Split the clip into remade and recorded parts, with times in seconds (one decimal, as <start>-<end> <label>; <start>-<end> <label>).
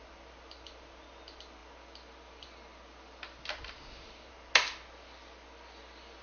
0.0-6.2 recorded